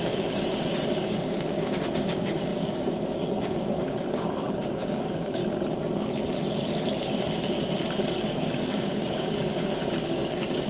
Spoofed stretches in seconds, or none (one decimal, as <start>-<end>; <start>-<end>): 0.0-5.4; 8.1-10.7